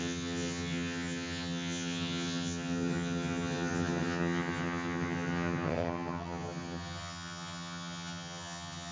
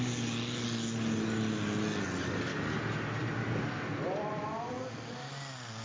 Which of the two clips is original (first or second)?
second